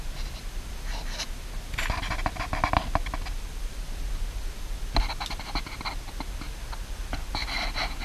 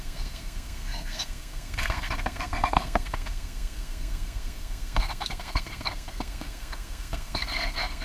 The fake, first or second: second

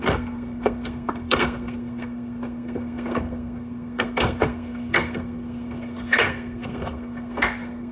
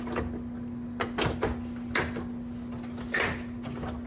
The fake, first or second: first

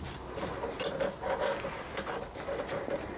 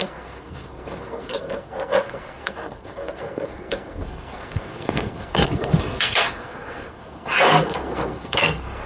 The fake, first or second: second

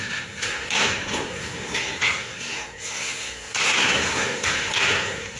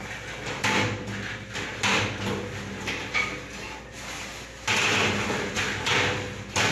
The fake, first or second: first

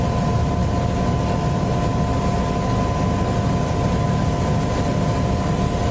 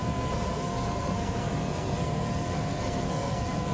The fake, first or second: second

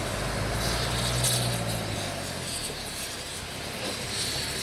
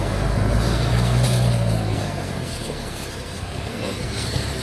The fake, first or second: second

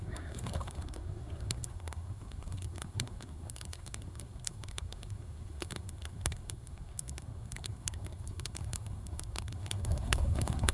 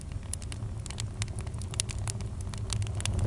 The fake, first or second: first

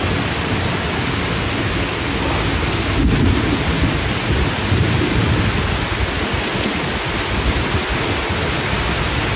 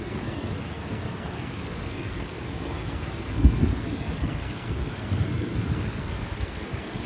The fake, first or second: second